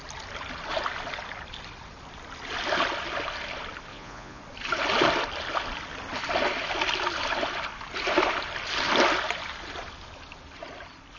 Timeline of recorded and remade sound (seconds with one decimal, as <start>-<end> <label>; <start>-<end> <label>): 0.0-3.9 recorded; 3.9-4.4 remade; 4.4-11.2 recorded